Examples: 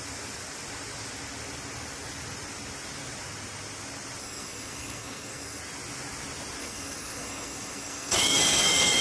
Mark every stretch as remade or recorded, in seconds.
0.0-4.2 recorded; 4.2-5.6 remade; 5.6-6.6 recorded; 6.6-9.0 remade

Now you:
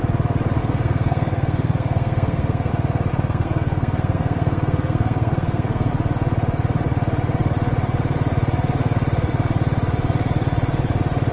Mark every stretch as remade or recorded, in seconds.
0.0-0.6 recorded; 0.6-2.7 remade; 2.7-3.1 recorded; 3.1-5.9 remade; 5.9-11.3 recorded

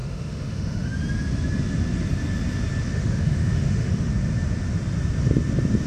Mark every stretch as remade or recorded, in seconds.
0.0-0.9 remade; 0.9-2.9 recorded; 2.9-4.1 remade; 4.1-5.9 recorded